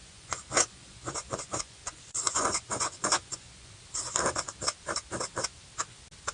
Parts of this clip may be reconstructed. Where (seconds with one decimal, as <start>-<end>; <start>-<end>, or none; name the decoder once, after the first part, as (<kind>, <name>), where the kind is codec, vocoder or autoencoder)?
0.0-3.7 (vocoder, Vocos)